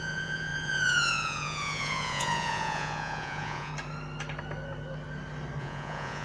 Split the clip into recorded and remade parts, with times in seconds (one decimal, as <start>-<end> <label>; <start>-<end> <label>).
0.0-3.7 remade; 3.7-5.6 recorded; 5.6-6.2 remade